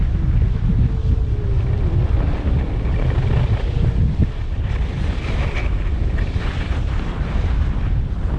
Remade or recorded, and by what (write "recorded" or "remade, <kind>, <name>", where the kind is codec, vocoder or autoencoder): recorded